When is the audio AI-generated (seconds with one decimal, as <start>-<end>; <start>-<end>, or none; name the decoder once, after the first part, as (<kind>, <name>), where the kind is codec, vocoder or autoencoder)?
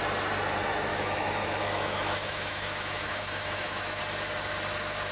0.9-4.0 (autoencoder, DAC-VAE)